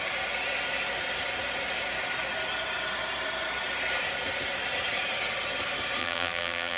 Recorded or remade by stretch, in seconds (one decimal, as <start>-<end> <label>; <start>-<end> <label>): 0.0-6.0 recorded; 6.0-6.8 remade